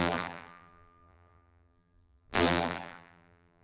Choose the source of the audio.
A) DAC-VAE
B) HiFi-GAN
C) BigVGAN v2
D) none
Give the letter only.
C